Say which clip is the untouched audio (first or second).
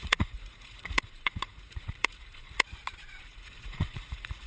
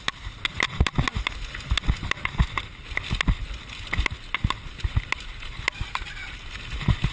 second